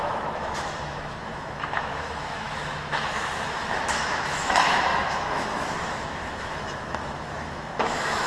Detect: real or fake fake